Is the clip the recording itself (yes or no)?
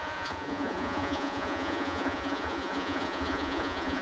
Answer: no